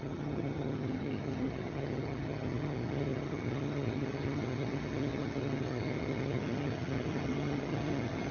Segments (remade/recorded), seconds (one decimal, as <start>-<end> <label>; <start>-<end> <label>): 0.0-8.3 remade